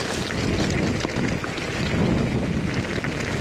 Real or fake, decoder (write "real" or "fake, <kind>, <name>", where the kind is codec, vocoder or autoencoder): real